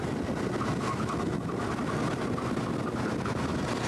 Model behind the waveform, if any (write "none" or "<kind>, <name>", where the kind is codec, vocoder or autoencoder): none